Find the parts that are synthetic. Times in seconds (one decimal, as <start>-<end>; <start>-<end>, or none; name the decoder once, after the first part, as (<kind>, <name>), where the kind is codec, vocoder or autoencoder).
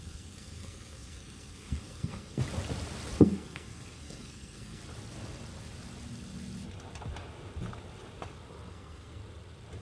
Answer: 0.0-2.4 (codec, SNAC); 3.2-4.8; 8.7-9.2